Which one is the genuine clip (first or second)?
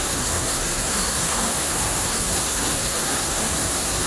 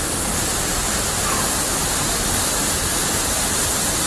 second